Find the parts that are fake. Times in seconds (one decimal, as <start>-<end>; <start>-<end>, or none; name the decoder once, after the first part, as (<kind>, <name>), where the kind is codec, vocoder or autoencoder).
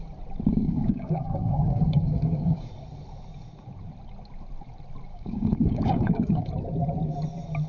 0.5-2.7 (codec, DAC); 5.1-6.5